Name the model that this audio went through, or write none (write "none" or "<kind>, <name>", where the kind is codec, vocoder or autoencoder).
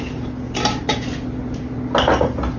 none